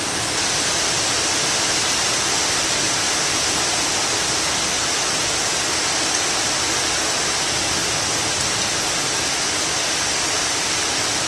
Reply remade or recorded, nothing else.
recorded